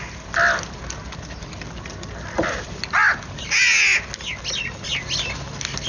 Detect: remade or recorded recorded